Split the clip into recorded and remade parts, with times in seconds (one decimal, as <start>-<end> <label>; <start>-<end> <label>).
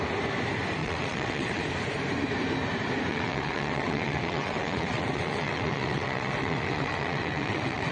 0.0-0.8 recorded; 0.8-1.6 remade; 1.6-3.1 recorded; 3.1-7.9 remade